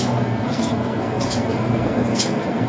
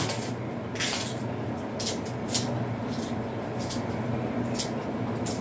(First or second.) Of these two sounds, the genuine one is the second